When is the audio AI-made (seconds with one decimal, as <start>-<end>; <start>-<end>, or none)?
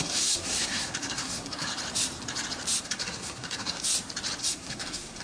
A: 0.0-1.7; 2.8-3.9; 4.4-5.2